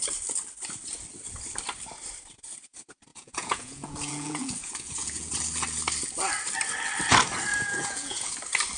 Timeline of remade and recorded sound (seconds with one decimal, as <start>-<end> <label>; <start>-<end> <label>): 0.0-3.1 recorded; 3.1-5.3 remade; 5.3-7.5 recorded; 7.5-8.3 remade; 8.3-8.8 recorded

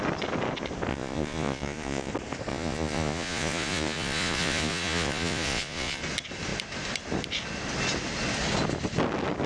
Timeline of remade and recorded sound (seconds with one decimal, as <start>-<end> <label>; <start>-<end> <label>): 0.0-0.9 recorded; 0.9-2.1 remade; 2.1-2.5 recorded; 2.5-6.0 remade; 6.0-9.5 recorded

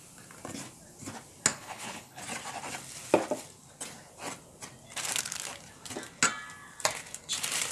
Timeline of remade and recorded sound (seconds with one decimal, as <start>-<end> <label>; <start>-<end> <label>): 0.0-1.5 recorded; 1.5-2.2 remade; 2.2-7.7 recorded

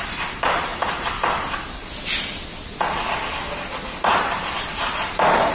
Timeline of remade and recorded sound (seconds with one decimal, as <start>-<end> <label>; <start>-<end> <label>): 0.0-0.7 remade; 0.7-4.0 recorded; 4.0-5.5 remade

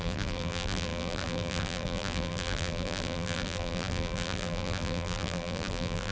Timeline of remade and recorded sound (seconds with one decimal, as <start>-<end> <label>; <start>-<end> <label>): 0.0-6.1 remade

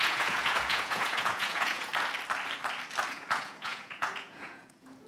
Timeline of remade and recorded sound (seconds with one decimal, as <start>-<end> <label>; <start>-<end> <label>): 0.0-1.9 remade; 1.9-3.1 recorded; 3.1-5.1 remade

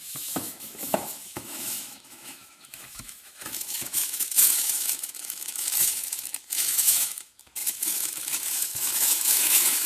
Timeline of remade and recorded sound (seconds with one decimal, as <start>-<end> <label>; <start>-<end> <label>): 0.0-9.9 remade